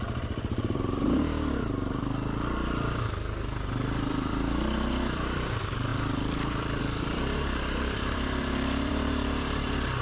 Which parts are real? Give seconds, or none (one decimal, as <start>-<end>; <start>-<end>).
none